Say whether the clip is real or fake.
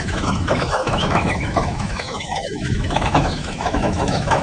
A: fake